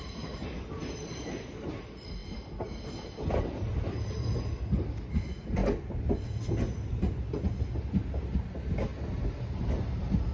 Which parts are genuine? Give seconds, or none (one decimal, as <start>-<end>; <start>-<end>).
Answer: 0.0-10.3